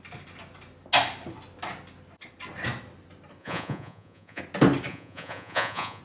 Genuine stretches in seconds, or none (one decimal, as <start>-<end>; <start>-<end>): 0.0-3.4; 4.4-4.9